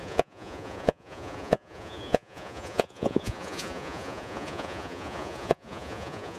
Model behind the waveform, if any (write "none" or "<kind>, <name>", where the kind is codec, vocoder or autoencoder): vocoder, Vocos